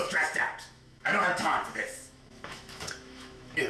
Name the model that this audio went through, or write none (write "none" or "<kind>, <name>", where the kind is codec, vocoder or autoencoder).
autoencoder, DAC-VAE